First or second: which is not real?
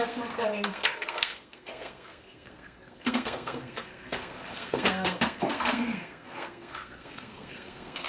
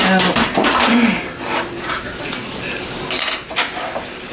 first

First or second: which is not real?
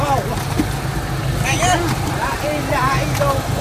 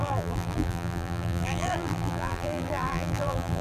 second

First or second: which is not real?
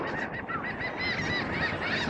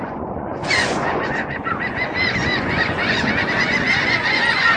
second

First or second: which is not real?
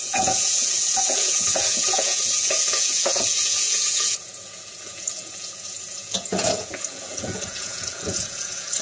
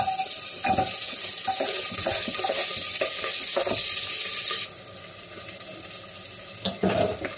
first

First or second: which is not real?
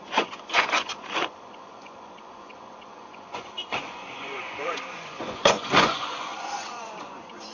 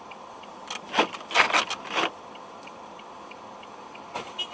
first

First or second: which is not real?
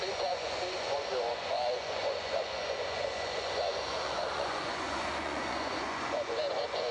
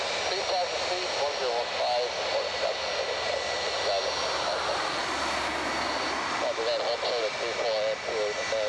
first